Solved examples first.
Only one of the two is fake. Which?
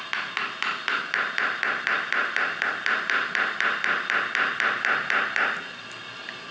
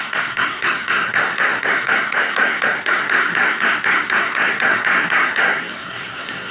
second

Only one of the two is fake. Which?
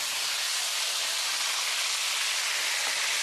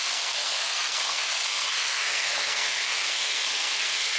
second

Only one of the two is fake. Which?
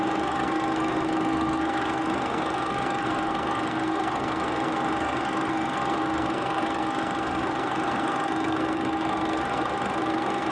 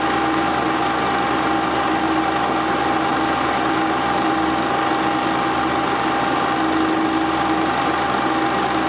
first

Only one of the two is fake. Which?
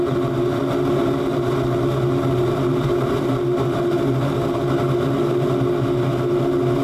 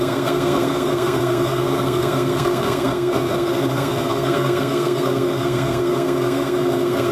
second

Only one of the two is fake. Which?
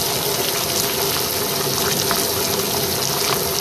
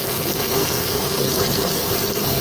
second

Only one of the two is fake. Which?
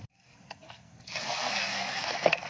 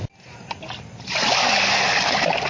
first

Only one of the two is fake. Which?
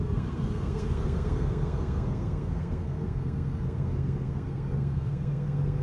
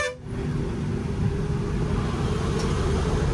first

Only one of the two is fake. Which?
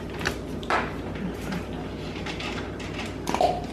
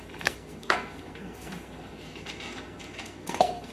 second